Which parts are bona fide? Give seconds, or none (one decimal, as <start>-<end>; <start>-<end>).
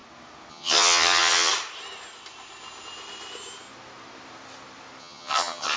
0.0-0.5; 1.5-5.0